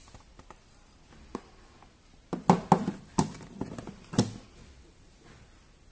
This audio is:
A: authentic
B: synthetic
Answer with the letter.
A